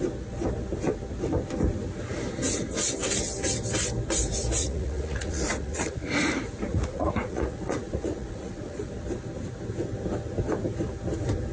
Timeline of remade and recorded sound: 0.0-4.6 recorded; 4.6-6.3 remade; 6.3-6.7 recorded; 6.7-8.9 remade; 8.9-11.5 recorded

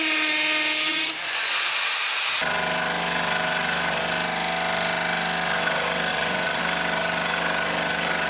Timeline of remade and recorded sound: 0.0-0.9 recorded; 0.9-1.5 remade; 1.5-6.1 recorded; 6.1-6.6 remade; 6.6-8.3 recorded

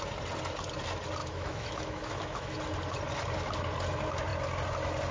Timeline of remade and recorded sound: 0.0-1.2 recorded; 1.2-2.6 remade; 2.6-5.1 recorded